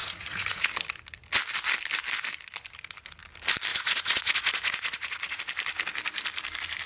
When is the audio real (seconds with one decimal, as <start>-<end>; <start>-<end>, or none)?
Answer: 0.7-3.7; 5.4-6.9